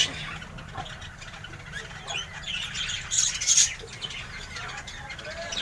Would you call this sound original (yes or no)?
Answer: yes